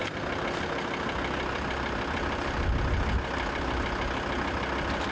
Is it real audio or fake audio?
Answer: real